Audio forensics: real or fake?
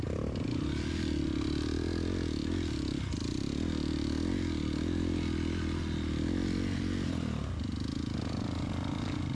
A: real